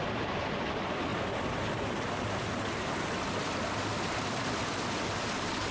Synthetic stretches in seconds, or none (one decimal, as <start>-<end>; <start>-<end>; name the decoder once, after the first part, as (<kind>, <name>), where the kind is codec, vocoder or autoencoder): none